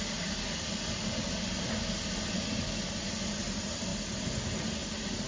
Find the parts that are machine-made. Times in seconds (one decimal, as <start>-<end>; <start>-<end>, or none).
none